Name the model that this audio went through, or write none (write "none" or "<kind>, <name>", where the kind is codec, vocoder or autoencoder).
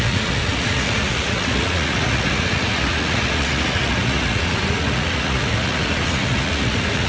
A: vocoder, Vocos